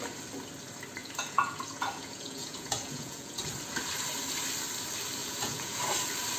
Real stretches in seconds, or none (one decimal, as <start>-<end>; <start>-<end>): 0.0-1.0; 3.5-5.2; 5.8-6.4

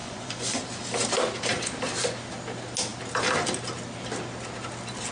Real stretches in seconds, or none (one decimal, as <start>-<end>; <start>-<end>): 0.6-5.1

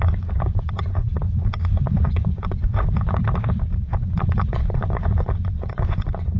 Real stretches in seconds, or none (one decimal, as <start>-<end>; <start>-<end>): 3.2-4.0

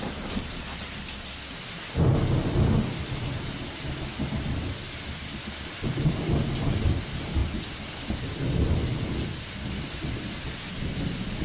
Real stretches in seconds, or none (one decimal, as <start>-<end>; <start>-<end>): 0.0-11.4

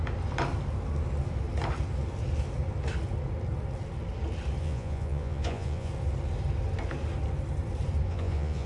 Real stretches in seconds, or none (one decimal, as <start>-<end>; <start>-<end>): 0.0-4.6; 5.9-8.1

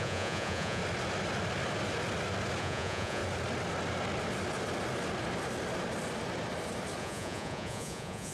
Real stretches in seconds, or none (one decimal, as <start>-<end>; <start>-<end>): 0.8-2.6; 3.2-7.0

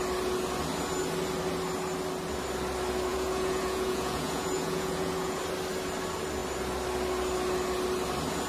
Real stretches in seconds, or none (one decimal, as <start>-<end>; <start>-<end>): 0.0-3.1; 5.4-8.5

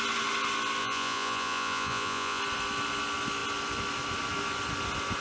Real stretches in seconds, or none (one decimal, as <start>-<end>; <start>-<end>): 0.0-0.8; 2.4-5.2